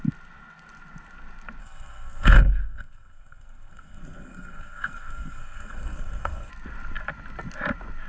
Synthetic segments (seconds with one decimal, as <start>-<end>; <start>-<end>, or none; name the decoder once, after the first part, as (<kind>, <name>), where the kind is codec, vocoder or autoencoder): 1.6-6.5 (codec, SNAC)